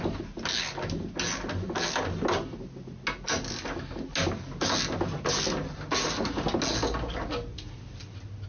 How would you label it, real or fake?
real